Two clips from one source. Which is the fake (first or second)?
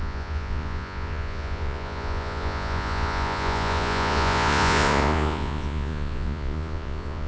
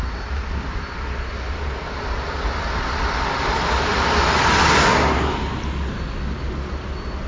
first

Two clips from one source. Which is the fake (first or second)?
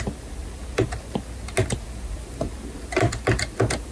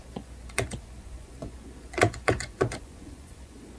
second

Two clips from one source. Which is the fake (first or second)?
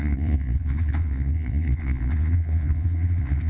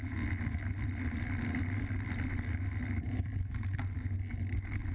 first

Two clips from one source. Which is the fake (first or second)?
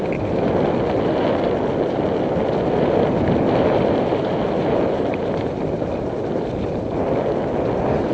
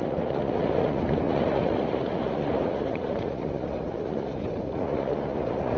second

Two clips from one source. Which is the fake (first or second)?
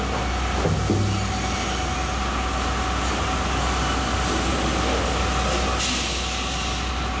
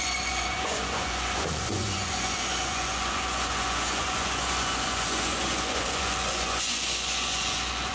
second